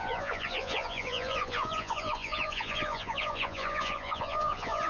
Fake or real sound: fake